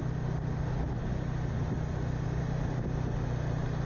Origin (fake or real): real